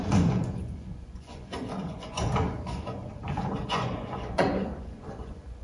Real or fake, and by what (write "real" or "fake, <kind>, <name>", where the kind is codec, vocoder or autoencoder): fake, vocoder, Vocos